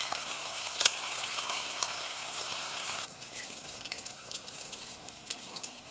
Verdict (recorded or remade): remade